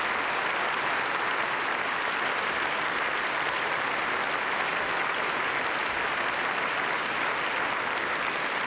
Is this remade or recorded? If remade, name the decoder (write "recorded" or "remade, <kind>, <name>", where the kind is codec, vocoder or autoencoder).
recorded